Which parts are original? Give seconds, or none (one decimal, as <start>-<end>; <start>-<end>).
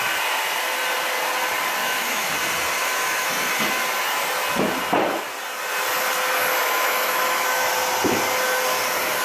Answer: 0.0-1.8; 2.3-2.8; 3.3-6.5; 7.7-9.2